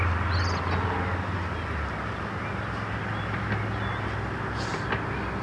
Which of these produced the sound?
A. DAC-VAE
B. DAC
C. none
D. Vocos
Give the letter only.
C